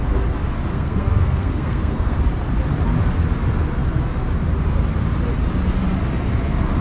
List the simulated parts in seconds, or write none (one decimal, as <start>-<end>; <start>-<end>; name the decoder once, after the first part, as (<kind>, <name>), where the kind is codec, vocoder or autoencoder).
0.7-2.2 (codec, SNAC)